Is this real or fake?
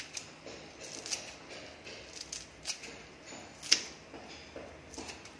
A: real